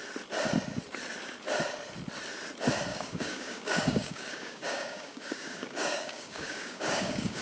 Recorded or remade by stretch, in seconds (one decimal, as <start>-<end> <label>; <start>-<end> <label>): 0.0-2.9 recorded; 2.9-7.4 remade

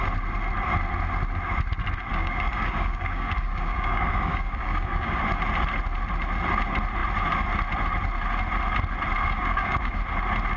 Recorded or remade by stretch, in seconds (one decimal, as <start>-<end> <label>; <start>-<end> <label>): 0.0-2.1 recorded; 2.1-5.2 remade; 5.2-9.2 recorded; 9.2-10.0 remade; 10.0-10.6 recorded